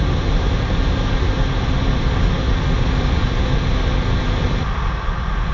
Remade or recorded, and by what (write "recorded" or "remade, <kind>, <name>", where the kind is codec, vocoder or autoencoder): recorded